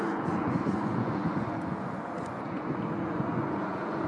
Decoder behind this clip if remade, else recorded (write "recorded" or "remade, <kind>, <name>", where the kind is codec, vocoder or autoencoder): remade, vocoder, Vocos